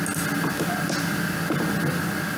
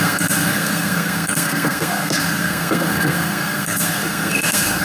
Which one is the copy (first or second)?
second